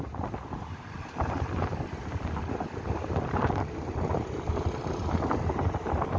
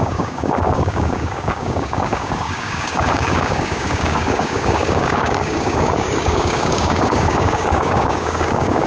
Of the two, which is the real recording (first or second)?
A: first